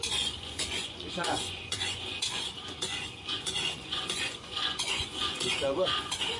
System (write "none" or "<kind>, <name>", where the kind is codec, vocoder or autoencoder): vocoder, Vocos